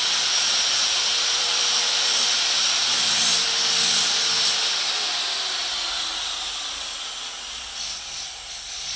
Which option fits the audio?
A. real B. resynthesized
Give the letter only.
A